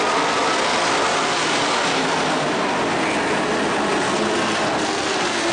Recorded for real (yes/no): yes